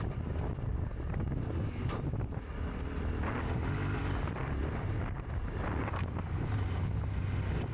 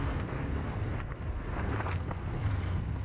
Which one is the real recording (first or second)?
first